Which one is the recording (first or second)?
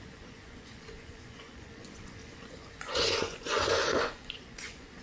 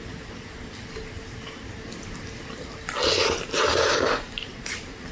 second